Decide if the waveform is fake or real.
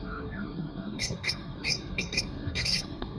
fake